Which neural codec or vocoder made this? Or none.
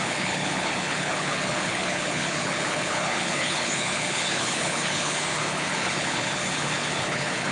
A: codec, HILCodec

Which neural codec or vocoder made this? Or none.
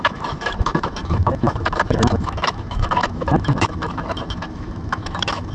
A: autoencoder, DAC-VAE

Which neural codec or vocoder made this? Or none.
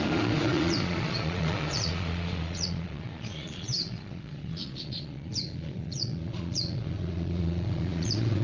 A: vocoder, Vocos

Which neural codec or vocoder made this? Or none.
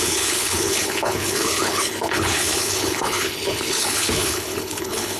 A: codec, HILCodec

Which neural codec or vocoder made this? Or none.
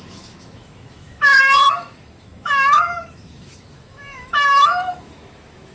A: autoencoder, DAC-VAE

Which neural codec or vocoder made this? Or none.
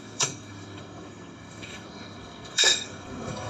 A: codec, SNAC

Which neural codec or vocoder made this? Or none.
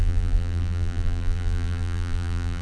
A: vocoder, BigVGAN v2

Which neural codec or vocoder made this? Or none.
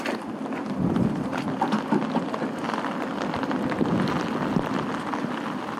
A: none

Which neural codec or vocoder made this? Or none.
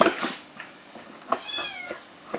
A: codec, DAC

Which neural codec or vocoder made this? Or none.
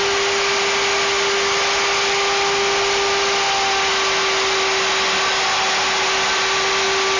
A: none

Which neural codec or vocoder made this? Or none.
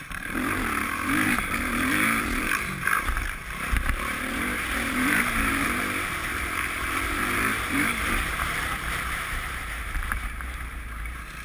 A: vocoder, BigVGAN v2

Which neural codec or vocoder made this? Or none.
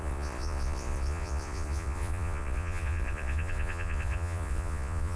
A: vocoder, Vocos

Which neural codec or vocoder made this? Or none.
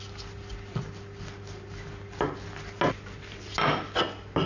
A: none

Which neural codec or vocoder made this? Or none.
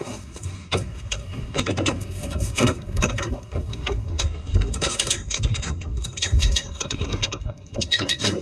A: codec, SNAC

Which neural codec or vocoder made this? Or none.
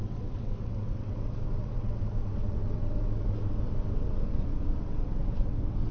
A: vocoder, WaveNeXt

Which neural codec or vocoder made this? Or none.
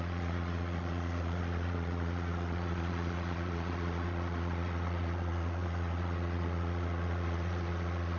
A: vocoder, Vocos